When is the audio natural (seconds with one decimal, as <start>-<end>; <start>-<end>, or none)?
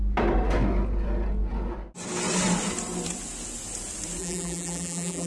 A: 0.0-4.2